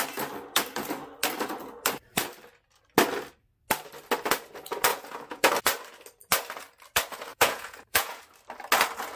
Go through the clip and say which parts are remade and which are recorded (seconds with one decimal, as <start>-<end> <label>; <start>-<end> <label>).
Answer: 0.0-4.9 recorded; 4.9-5.5 remade; 5.5-7.3 recorded; 7.3-8.2 remade; 8.2-9.2 recorded